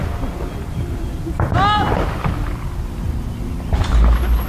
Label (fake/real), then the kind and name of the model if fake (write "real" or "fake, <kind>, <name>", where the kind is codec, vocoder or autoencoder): real